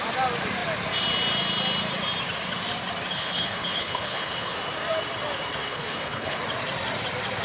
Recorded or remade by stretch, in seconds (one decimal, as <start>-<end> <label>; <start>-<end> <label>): 0.0-3.1 recorded; 3.1-4.6 remade; 4.6-5.6 recorded; 5.6-6.4 remade; 6.4-7.4 recorded